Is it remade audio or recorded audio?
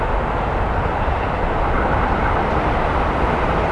recorded